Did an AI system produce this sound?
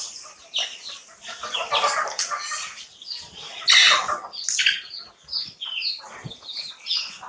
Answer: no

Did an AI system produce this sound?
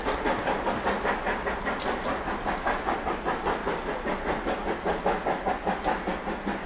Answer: no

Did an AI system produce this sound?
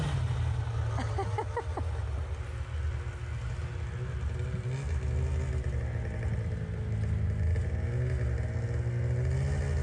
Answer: no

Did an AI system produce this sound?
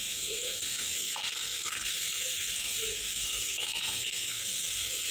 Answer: yes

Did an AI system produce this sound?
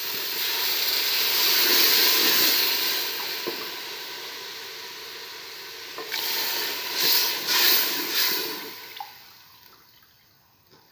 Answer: no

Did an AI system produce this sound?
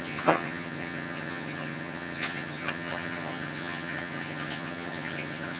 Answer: yes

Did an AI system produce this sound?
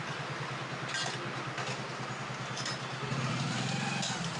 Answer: no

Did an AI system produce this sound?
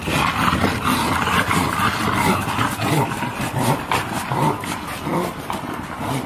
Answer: no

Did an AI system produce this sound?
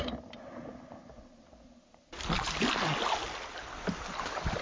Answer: no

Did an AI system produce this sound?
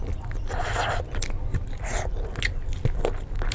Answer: no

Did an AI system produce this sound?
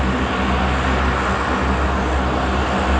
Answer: no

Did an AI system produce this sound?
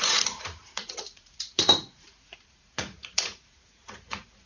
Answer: yes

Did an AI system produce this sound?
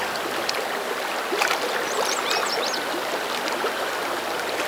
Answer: no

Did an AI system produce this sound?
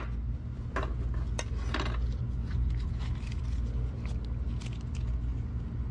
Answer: no